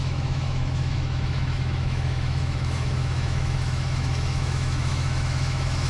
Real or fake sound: fake